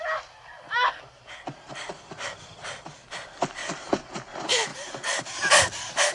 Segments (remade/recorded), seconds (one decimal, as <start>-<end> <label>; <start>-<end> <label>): 0.0-3.6 recorded; 3.6-4.1 remade; 4.1-4.7 recorded; 4.7-5.5 remade; 5.5-6.1 recorded